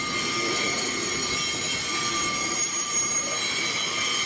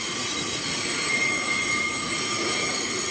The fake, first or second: second